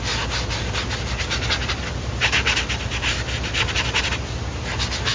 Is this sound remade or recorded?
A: recorded